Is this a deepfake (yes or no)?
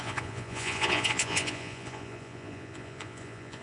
yes